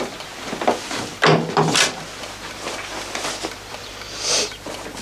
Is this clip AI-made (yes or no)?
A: no